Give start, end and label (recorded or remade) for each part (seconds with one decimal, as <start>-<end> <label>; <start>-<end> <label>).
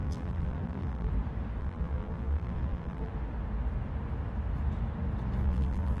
0.0-1.1 remade; 1.1-1.6 recorded; 1.6-3.1 remade; 3.1-5.4 recorded; 5.4-6.0 remade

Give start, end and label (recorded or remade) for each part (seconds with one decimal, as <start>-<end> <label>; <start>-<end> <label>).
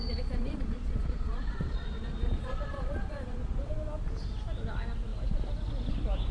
0.0-3.7 remade; 3.7-6.3 recorded